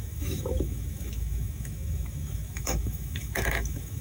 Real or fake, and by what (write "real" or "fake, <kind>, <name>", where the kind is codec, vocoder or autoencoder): fake, autoencoder, DAC-VAE